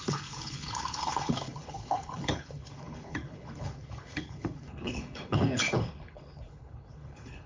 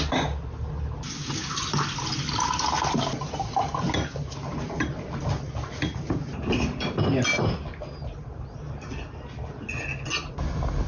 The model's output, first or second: first